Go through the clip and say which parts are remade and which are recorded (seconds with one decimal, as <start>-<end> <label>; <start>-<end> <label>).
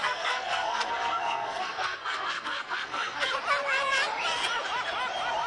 0.0-3.3 remade; 3.3-5.5 recorded